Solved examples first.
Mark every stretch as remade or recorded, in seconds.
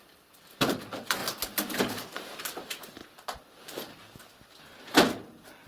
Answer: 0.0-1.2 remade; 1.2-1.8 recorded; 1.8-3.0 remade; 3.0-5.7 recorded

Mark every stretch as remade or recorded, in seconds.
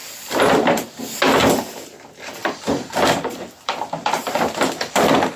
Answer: 0.0-1.2 remade; 1.2-2.4 recorded; 2.4-4.7 remade; 4.7-5.4 recorded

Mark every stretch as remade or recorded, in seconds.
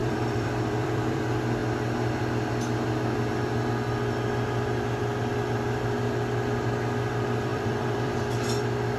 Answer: 0.0-1.2 remade; 1.2-7.5 recorded; 7.5-8.2 remade; 8.2-9.0 recorded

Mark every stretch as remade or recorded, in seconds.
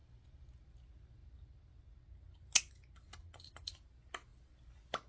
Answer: 0.0-0.6 remade; 0.6-3.2 recorded; 3.2-3.7 remade; 3.7-5.1 recorded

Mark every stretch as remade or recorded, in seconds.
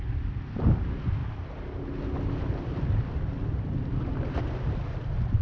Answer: 0.0-5.4 recorded